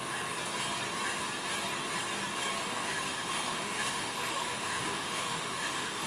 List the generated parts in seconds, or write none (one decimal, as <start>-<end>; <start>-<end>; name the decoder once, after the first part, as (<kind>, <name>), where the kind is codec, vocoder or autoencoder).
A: 2.6-6.1 (autoencoder, DAC-VAE)

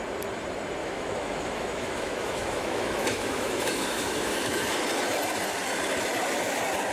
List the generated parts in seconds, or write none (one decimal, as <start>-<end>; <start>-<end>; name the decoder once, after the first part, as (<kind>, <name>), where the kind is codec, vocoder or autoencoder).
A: 0.8-4.8 (autoencoder, DAC-VAE)

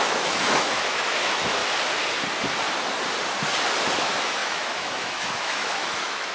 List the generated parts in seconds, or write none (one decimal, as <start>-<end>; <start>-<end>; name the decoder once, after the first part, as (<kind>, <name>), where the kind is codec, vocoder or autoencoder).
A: 0.0-1.6 (autoencoder, DAC-VAE); 4.0-6.3

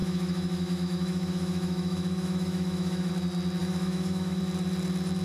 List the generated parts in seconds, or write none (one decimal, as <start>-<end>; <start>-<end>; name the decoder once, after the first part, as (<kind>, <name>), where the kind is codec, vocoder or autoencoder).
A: 0.0-3.1 (autoencoder, DAC-VAE); 3.6-4.4

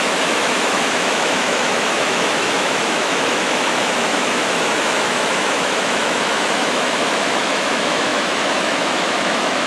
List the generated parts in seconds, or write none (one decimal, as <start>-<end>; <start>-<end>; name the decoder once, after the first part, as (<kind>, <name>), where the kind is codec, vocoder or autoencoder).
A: 0.0-9.7 (autoencoder, DAC-VAE)

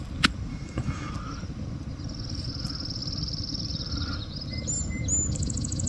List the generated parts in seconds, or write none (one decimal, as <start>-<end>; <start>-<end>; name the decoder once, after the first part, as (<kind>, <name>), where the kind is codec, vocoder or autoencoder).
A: 0.5-1.1 (autoencoder, DAC-VAE)

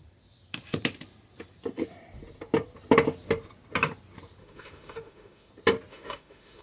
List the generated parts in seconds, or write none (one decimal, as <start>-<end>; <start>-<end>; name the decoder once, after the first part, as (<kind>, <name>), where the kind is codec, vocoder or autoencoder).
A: 4.4-5.5 (autoencoder, DAC-VAE); 5.9-6.6

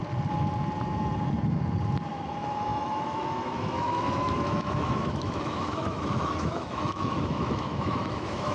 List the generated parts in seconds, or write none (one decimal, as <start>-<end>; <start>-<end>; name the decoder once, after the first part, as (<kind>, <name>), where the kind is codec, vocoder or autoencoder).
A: 2.1-8.5 (autoencoder, DAC-VAE)